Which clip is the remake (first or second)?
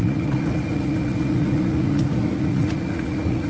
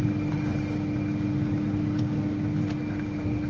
first